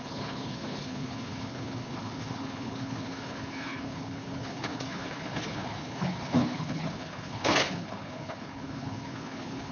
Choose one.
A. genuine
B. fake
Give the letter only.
B